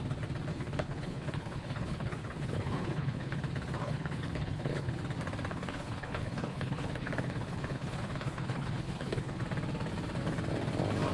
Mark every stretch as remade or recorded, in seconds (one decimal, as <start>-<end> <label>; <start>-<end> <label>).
0.0-0.5 recorded; 0.5-3.4 remade; 3.4-3.8 recorded; 3.8-4.9 remade; 4.9-5.5 recorded; 5.5-9.4 remade; 9.4-11.1 recorded